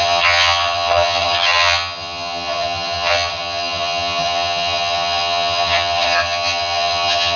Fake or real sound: fake